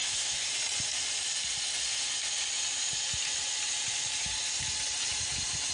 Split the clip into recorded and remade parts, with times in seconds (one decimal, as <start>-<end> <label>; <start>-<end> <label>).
0.0-0.5 remade; 0.5-5.7 recorded